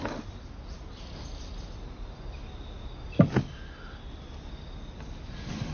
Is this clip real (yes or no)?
yes